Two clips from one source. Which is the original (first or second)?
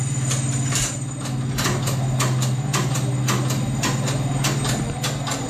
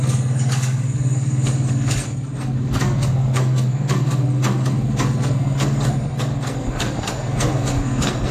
first